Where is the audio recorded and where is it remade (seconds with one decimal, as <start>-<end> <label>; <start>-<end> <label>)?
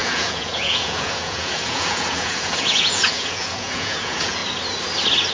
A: 0.0-4.4 remade; 4.4-5.3 recorded